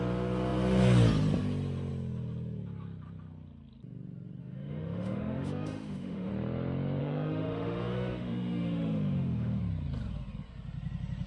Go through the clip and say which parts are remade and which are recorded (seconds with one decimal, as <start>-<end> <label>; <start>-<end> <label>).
0.0-4.4 recorded; 4.4-6.3 remade; 6.3-7.0 recorded; 7.0-9.6 remade; 9.6-11.3 recorded